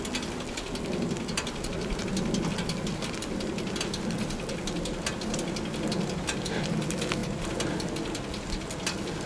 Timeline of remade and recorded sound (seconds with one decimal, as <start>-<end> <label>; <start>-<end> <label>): 0.0-9.3 recorded